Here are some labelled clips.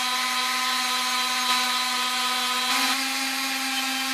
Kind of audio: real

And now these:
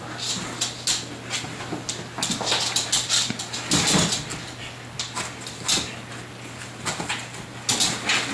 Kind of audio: real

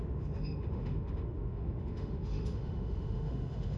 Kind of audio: fake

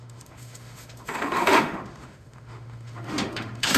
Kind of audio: fake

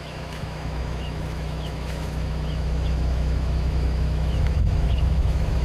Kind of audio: fake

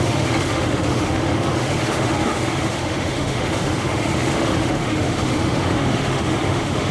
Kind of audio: fake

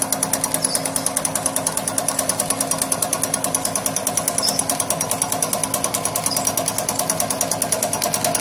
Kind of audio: real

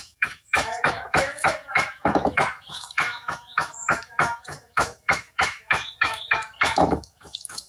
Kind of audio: fake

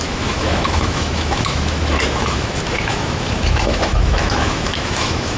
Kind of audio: fake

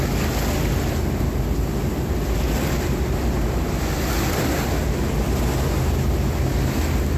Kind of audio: real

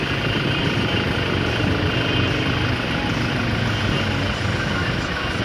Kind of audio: real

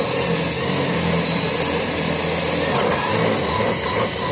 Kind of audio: real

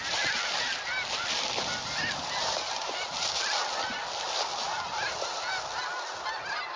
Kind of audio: real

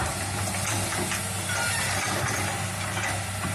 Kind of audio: real